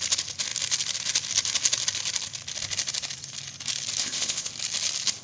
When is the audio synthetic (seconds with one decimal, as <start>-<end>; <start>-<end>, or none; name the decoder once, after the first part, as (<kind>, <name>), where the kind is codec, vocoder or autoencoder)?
4.0-4.5 (codec, ZipCodec)